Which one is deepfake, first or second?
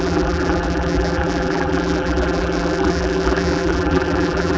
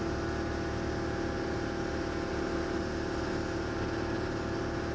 first